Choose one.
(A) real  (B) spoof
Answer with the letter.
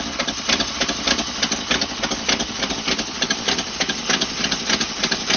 B